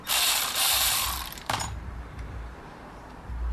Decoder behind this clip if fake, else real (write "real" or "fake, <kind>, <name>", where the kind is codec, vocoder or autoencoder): fake, vocoder, BigVGAN v2